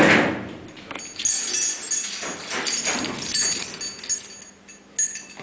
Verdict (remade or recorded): recorded